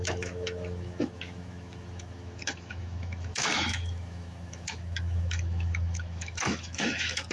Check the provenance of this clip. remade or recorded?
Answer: remade